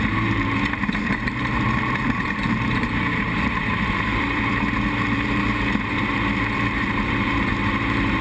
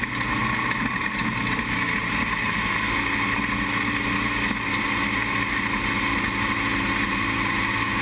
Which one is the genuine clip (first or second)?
second